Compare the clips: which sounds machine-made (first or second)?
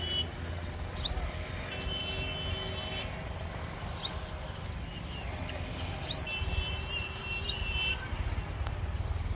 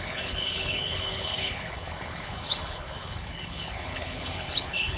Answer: second